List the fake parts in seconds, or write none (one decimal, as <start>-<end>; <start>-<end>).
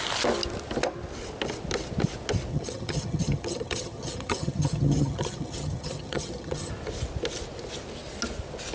2.5-6.7